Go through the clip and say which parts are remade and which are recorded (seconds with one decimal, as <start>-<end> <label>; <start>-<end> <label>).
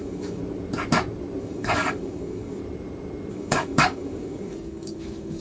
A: 0.0-0.4 remade; 0.4-1.4 recorded; 1.4-2.6 remade; 2.6-3.3 recorded; 3.3-5.4 remade